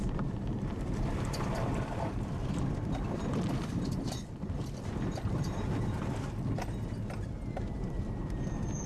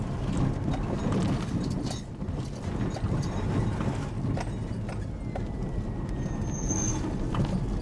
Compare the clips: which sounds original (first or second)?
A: second